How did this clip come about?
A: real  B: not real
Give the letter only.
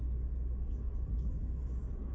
A